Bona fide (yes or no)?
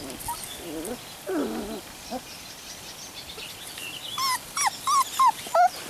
yes